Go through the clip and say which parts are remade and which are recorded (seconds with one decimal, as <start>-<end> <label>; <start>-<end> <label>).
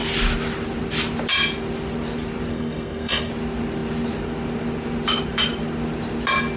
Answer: 0.0-2.5 recorded; 2.5-3.3 remade; 3.3-6.6 recorded